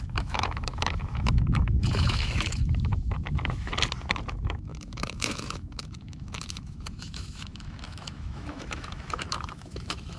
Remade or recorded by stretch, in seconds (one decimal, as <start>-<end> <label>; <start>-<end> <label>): 0.0-3.7 remade; 3.7-4.3 recorded; 4.3-10.2 remade